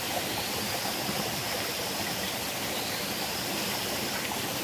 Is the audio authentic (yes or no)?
yes